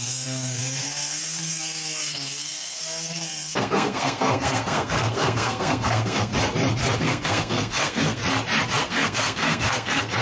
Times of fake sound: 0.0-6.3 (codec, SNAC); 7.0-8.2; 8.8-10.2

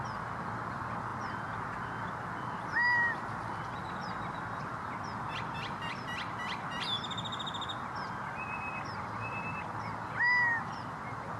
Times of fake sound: none

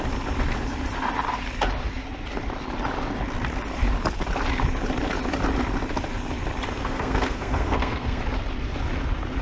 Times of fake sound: 6.8-8.2 (codec, SNAC)

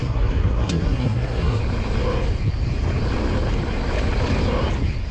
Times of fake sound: 0.0-1.6 (codec, SNAC)

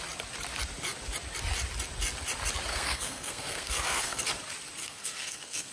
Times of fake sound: 2.7-4.2 (codec, SNAC); 4.8-5.7

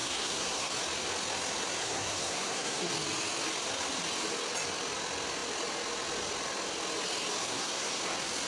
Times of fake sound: 0.0-0.7 (codec, SNAC); 1.8-2.9; 7.4-8.0

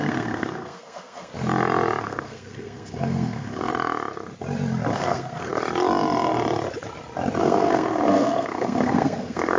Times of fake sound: 0.0-1.3 (codec, SNAC); 2.0-3.7; 4.9-5.5; 7.4-9.6